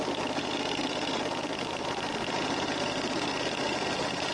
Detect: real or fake real